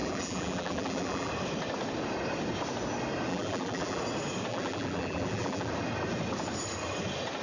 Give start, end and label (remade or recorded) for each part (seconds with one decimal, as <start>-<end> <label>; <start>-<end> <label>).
0.0-1.3 remade; 1.3-3.3 recorded; 3.3-4.0 remade; 4.0-4.5 recorded; 4.5-5.7 remade; 5.7-7.4 recorded